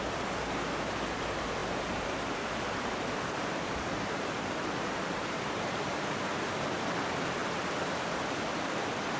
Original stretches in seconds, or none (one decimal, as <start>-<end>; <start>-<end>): 0.0-1.6; 5.8-9.2